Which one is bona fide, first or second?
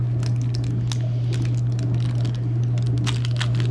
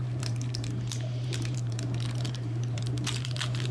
first